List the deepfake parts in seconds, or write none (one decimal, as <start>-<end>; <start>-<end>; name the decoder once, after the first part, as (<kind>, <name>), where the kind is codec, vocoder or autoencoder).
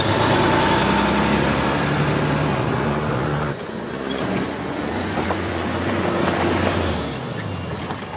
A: 2.5-6.1 (vocoder, Vocos)